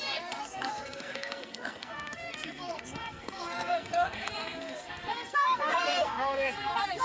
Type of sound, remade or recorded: remade